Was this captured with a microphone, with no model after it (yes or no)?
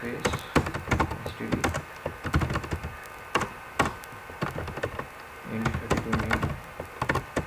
yes